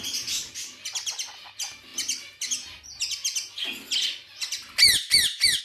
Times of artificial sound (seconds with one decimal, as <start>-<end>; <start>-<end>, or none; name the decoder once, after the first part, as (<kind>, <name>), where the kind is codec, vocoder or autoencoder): none